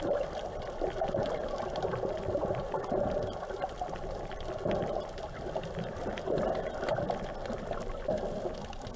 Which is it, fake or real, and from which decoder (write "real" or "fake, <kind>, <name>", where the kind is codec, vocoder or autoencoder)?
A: real